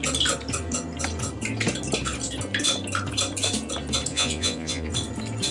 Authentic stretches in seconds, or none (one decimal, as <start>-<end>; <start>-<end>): 0.0-4.1; 4.9-5.5